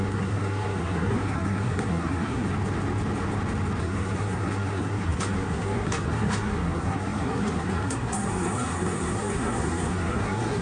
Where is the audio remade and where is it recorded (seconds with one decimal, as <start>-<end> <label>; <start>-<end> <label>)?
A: 0.0-2.5 remade; 2.5-3.8 recorded; 3.8-10.6 remade